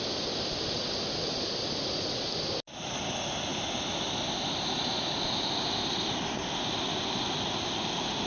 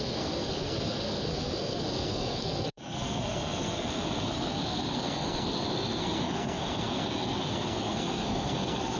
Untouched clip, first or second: first